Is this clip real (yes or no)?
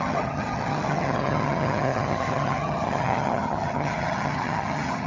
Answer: no